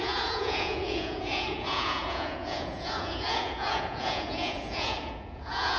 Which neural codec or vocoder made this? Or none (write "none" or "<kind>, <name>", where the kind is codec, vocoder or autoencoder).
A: vocoder, Vocos